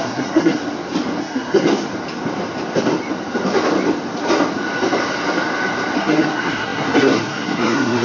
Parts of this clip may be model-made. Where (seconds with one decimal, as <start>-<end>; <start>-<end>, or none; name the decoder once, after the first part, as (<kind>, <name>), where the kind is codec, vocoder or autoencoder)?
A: 0.0-0.6 (codec, SNAC); 1.2-1.7; 6.0-8.0